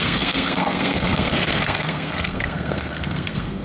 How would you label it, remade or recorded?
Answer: remade